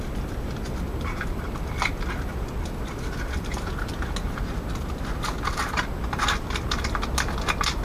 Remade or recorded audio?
recorded